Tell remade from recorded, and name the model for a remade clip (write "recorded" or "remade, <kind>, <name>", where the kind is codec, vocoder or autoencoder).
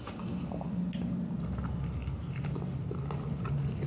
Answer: recorded